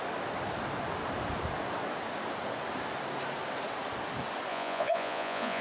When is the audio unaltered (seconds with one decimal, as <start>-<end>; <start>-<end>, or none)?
0.0-4.5